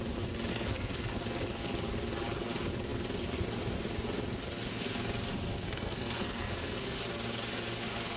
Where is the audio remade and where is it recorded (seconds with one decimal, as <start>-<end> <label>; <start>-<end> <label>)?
0.0-0.5 recorded; 0.5-1.1 remade; 1.1-5.5 recorded; 5.5-7.0 remade; 7.0-8.2 recorded